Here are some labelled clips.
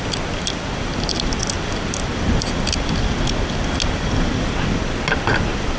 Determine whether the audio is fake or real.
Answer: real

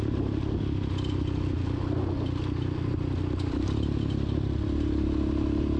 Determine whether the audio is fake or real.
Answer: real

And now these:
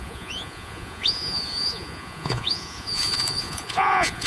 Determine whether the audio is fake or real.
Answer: fake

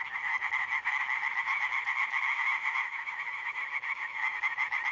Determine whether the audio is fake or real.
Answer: fake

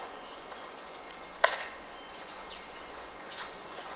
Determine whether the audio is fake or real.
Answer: fake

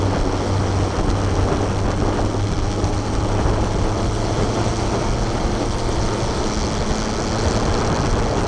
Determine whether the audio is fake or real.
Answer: real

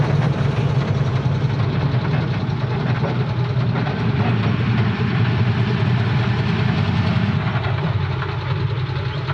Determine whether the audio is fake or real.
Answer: real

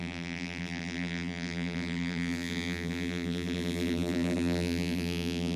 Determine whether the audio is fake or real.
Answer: fake